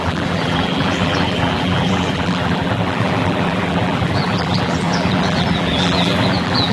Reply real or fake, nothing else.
fake